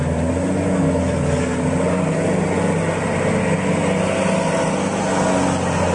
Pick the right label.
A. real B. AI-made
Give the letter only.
A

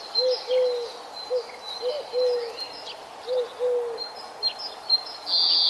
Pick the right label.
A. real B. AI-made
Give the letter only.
A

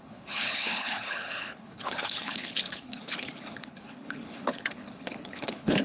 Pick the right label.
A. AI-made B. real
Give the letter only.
A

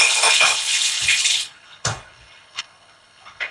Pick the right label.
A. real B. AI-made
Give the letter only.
B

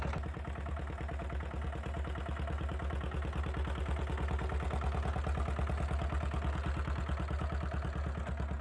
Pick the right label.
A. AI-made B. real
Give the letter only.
B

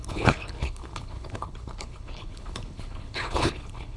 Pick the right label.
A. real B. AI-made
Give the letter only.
B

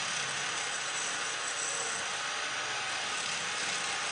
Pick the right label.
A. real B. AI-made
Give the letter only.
A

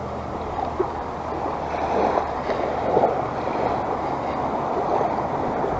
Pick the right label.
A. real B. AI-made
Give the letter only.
A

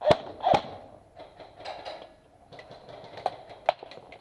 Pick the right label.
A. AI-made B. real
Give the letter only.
B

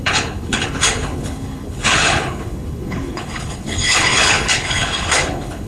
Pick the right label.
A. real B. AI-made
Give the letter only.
B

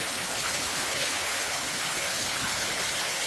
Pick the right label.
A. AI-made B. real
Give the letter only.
A